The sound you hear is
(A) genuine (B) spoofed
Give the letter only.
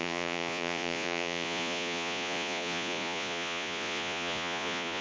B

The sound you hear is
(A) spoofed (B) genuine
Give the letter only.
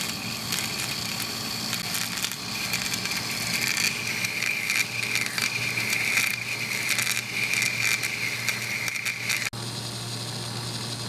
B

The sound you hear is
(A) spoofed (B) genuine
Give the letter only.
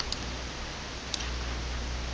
B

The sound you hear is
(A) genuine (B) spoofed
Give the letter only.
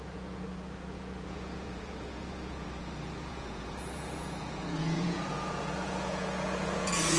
B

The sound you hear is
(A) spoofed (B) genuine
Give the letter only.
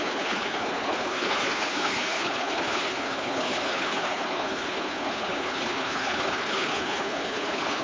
A